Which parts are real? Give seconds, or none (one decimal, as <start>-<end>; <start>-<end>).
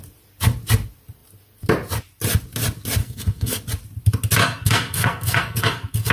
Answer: 0.0-3.0; 3.6-4.4